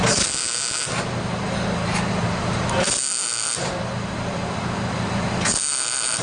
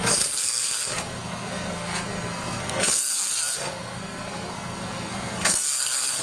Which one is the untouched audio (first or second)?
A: first